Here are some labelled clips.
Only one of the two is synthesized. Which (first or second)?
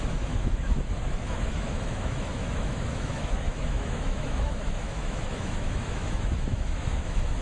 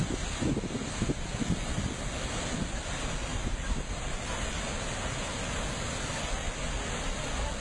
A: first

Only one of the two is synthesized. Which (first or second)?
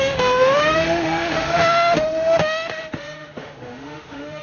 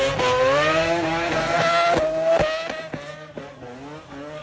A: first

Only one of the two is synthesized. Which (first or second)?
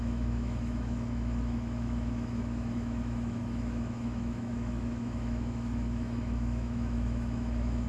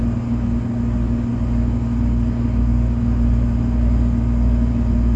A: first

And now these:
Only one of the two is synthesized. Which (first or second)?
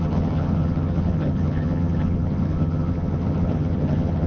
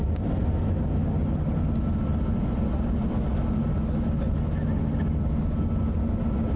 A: first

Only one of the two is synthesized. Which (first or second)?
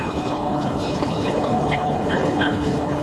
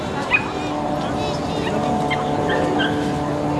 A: first